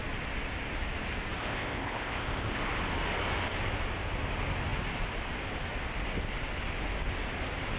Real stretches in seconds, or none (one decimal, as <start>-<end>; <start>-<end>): 0.0-1.4; 2.6-7.8